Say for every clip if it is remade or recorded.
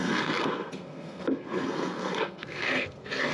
remade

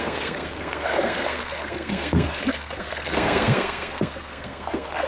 remade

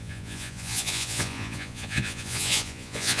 remade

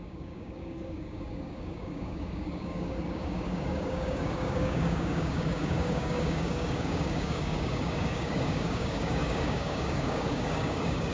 remade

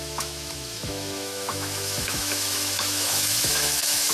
remade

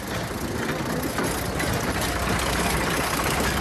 recorded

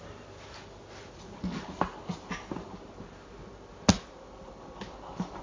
recorded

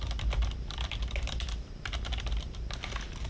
recorded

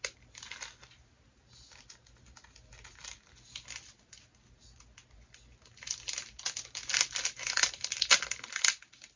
recorded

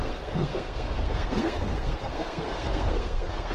remade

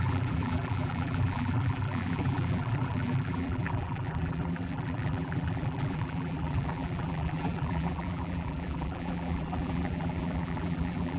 remade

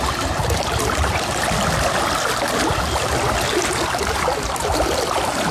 recorded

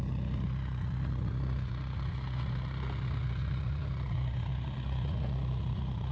remade